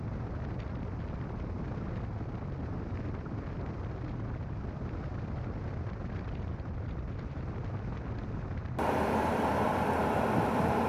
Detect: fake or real fake